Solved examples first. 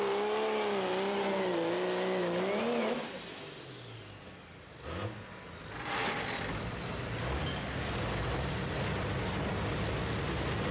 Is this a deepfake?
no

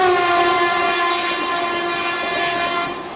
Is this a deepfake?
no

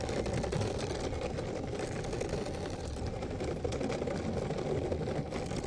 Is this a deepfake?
no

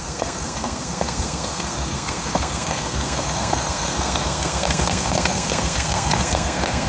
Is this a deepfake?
yes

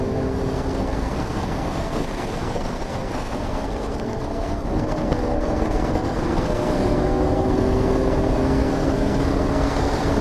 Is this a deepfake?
yes